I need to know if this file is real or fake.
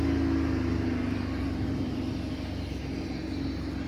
real